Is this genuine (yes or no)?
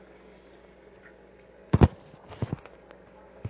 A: yes